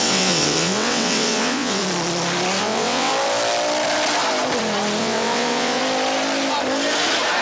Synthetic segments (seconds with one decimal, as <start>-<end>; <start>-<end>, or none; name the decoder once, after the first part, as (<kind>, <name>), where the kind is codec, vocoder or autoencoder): 0.0-1.8 (vocoder, WaveNeXt); 2.6-3.1; 5.0-5.8

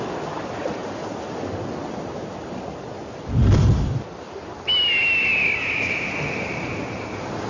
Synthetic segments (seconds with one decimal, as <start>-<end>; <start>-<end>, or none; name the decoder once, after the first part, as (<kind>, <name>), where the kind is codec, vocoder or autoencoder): none

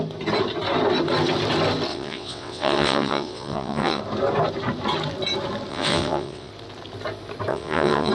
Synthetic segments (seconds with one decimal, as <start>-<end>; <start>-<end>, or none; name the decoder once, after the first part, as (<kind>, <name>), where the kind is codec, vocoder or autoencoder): 1.9-4.0 (vocoder, WaveNeXt); 5.7-6.5; 7.5-8.1

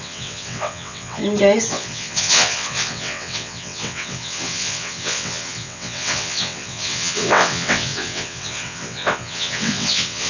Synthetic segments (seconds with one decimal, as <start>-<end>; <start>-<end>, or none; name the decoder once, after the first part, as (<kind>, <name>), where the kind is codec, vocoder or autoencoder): 0.0-1.2 (vocoder, WaveNeXt); 1.7-10.3

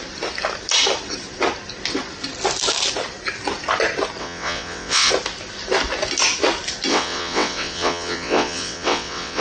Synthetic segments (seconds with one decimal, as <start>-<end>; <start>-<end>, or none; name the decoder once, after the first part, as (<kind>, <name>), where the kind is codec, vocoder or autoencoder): 4.2-5.1 (vocoder, WaveNeXt); 6.9-9.4

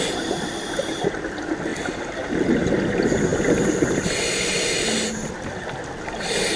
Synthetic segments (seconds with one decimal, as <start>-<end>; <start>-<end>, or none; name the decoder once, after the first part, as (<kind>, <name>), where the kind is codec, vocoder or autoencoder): none

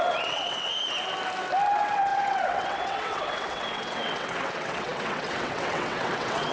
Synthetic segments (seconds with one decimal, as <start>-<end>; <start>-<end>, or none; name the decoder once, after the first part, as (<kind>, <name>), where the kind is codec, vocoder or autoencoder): 0.0-0.7 (vocoder, WaveNeXt); 1.7-6.5

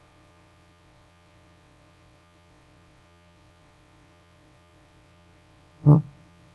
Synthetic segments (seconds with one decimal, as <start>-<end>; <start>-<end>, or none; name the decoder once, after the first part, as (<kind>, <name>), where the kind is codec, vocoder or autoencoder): 0.0-6.5 (vocoder, WaveNeXt)